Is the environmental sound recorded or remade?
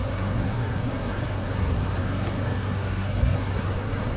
remade